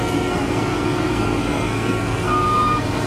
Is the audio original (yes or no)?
no